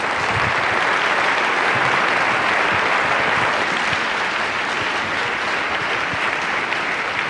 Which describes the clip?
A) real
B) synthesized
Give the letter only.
A